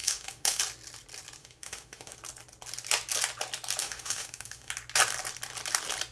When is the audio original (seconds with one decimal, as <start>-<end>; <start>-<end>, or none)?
0.6-1.4; 2.2-3.8; 4.7-6.1